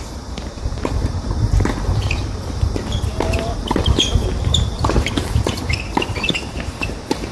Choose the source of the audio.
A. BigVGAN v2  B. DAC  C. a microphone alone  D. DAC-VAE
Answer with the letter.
A